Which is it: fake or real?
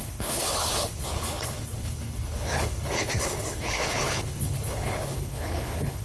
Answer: fake